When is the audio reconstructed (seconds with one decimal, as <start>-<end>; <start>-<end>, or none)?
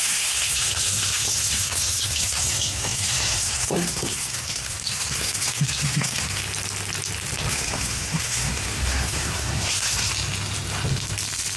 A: 0.0-6.4; 7.5-10.1